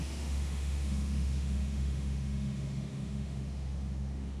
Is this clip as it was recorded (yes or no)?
no